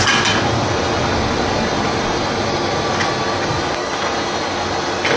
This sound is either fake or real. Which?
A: real